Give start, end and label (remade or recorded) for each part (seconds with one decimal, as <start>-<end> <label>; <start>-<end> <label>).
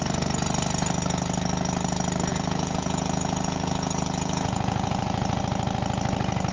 0.0-2.3 recorded; 2.3-5.4 remade; 5.4-6.5 recorded